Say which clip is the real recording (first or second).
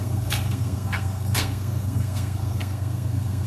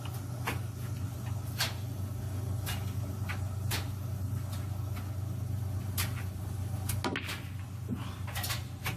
second